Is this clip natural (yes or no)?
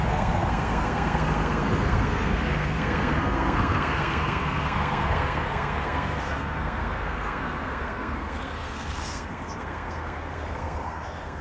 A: no